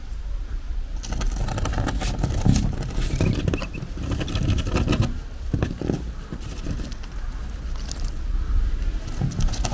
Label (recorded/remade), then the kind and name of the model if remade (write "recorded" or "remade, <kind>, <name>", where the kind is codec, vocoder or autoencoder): recorded